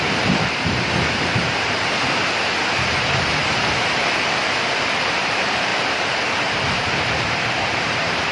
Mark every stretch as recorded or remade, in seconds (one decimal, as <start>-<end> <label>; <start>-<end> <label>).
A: 0.0-8.3 remade

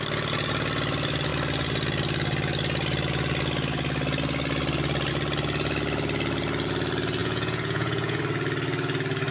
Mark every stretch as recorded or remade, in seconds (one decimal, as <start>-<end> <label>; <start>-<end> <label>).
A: 0.0-7.2 recorded; 7.2-8.2 remade; 8.2-9.3 recorded

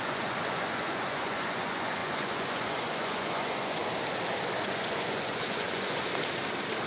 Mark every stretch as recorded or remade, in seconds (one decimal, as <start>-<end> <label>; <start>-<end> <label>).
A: 0.0-3.8 remade; 3.8-4.5 recorded; 4.5-6.1 remade; 6.1-6.9 recorded

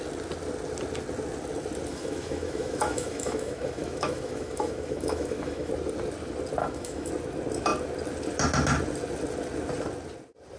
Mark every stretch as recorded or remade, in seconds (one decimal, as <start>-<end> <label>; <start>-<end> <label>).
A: 0.0-1.9 recorded; 1.9-5.7 remade; 5.7-6.6 recorded; 6.6-7.1 remade; 7.1-10.6 recorded

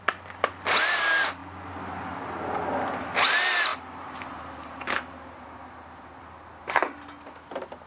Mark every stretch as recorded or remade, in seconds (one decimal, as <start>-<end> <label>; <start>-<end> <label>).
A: 0.0-3.7 recorded; 3.7-6.2 remade; 6.2-7.9 recorded

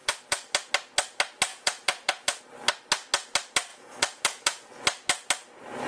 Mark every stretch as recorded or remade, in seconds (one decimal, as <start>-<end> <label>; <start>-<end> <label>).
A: 0.0-1.5 recorded; 1.5-2.4 remade; 2.4-3.7 recorded; 3.7-4.7 remade; 4.7-5.9 recorded